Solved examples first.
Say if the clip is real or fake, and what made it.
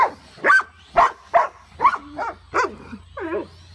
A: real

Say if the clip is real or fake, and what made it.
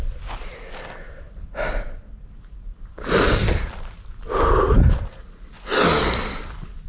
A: real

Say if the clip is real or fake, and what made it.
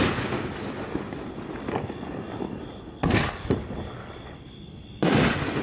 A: real